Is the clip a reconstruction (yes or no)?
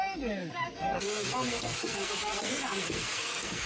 yes